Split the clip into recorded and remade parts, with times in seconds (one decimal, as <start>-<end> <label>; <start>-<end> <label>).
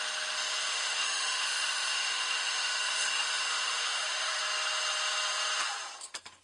0.0-0.6 recorded; 0.6-4.4 remade; 4.4-6.4 recorded